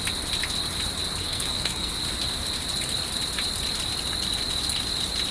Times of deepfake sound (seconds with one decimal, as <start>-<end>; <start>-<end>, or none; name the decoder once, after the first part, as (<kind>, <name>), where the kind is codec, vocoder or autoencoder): 1.2-1.9 (codec, SNAC)